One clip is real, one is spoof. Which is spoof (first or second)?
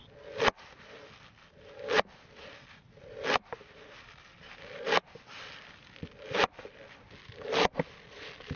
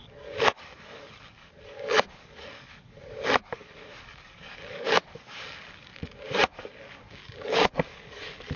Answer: second